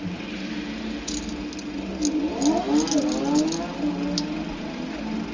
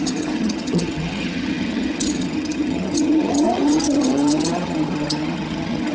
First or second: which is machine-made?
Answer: second